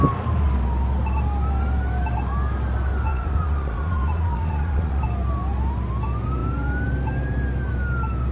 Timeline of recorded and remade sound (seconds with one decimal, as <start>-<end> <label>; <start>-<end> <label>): 0.0-3.1 recorded; 3.1-5.0 remade; 5.0-8.3 recorded